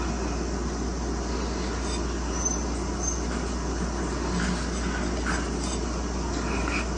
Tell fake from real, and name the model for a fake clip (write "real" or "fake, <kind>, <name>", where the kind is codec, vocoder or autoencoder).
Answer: real